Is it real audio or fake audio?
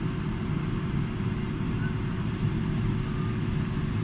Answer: real